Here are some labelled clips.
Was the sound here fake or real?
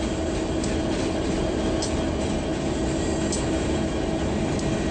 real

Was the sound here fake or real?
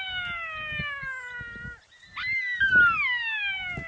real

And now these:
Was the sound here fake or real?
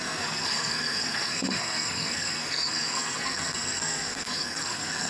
fake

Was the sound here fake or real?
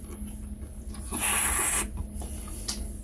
real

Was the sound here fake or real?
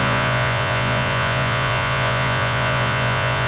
fake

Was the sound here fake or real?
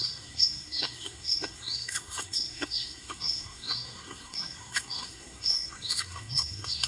fake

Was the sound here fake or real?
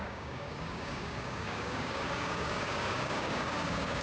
fake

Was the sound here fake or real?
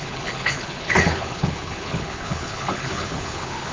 fake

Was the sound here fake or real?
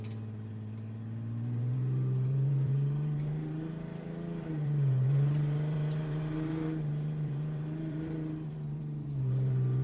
fake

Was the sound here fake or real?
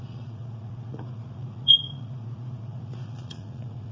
fake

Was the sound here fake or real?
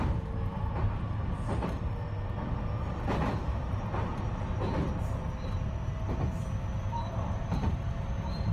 real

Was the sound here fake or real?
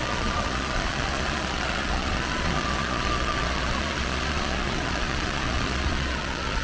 fake